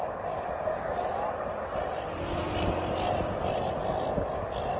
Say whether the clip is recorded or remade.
recorded